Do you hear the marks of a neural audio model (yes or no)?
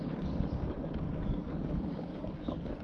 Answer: yes